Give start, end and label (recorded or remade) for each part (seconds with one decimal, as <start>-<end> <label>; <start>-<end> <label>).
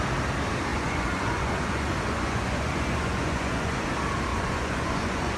0.0-0.7 recorded; 0.7-3.9 remade; 3.9-4.3 recorded; 4.3-5.4 remade